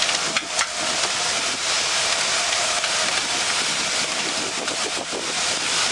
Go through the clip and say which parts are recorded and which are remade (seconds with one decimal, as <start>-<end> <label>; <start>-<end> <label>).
0.0-1.6 recorded; 1.6-5.1 remade; 5.1-5.9 recorded